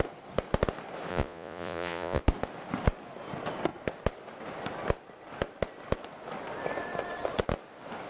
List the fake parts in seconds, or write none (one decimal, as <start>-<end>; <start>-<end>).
1.1-2.2